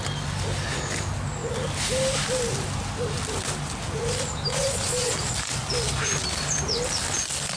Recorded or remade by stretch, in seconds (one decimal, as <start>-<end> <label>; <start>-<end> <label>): 0.0-4.5 recorded; 4.5-5.1 remade; 5.1-7.6 recorded